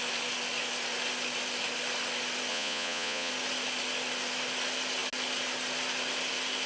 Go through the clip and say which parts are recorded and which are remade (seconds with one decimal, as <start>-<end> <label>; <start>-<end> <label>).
0.0-2.5 recorded; 2.5-3.3 remade; 3.3-6.7 recorded

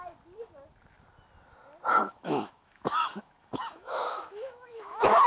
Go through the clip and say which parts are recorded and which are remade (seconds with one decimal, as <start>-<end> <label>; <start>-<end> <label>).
0.0-1.9 recorded; 1.9-5.3 remade

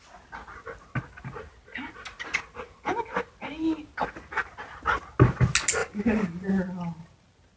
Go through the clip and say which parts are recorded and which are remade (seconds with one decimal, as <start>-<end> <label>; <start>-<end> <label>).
0.0-5.8 recorded; 5.8-6.5 remade; 6.5-7.6 recorded

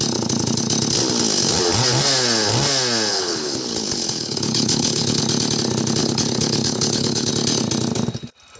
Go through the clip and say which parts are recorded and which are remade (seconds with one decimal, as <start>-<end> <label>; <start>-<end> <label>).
0.0-3.1 recorded; 3.1-5.2 remade; 5.2-6.0 recorded; 6.0-7.3 remade; 7.3-8.6 recorded

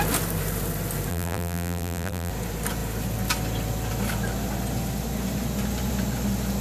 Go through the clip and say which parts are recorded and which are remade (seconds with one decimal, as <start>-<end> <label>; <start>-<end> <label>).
0.0-1.1 recorded; 1.1-2.3 remade; 2.3-6.6 recorded

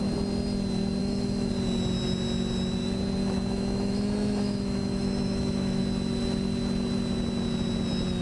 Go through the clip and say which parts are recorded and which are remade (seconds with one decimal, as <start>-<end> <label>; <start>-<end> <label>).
0.0-1.0 recorded; 1.0-1.5 remade; 1.5-3.2 recorded; 3.2-5.8 remade; 5.8-8.2 recorded